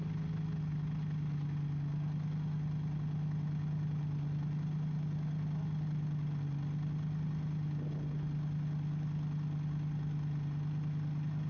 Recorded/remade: recorded